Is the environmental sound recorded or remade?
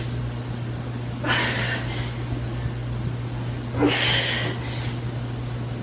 recorded